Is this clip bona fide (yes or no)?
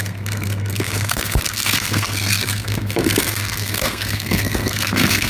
no